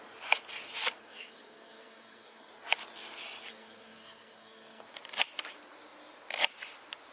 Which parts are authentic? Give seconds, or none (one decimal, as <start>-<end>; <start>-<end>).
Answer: 0.0-1.0; 2.5-3.5; 4.8-7.1